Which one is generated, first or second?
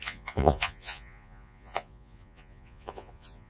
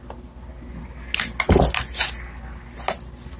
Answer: first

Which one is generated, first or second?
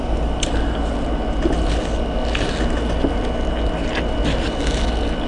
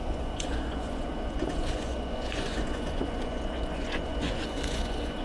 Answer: second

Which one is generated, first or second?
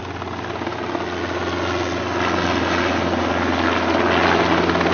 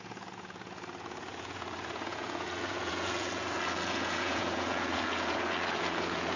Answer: second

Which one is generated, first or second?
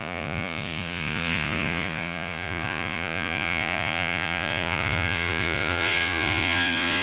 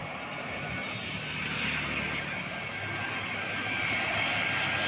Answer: first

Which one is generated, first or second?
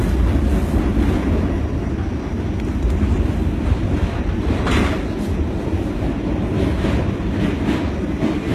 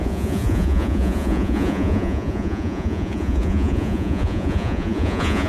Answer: second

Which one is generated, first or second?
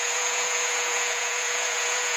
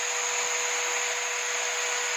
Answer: first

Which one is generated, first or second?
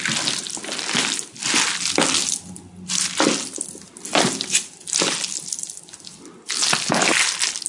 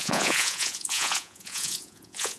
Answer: second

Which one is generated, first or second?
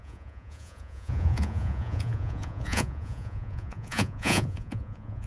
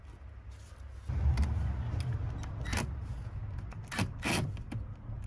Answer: first